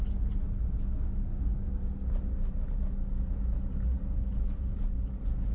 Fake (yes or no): no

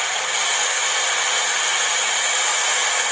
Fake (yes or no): no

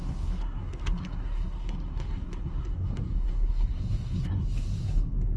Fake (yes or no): yes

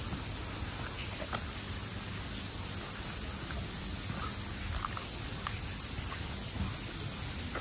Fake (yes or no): no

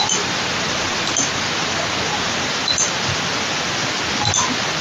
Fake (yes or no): no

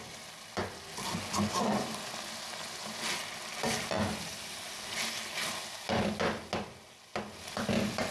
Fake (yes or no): no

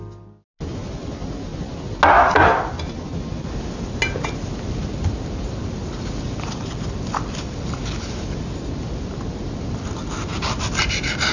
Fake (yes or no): no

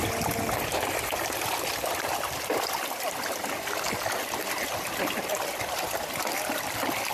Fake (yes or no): no